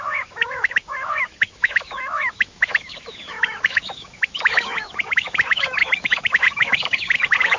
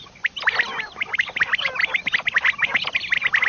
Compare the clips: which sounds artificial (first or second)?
first